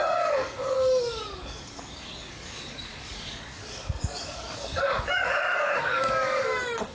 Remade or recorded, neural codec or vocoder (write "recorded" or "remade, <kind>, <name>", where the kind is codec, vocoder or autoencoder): remade, codec, DAC